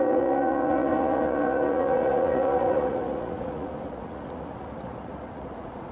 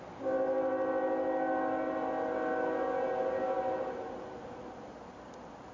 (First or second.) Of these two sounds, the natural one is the second